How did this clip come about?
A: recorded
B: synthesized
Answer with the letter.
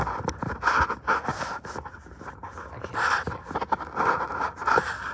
A